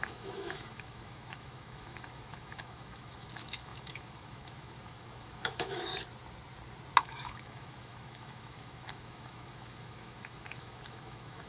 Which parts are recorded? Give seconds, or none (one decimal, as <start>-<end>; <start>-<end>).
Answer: 5.9-7.0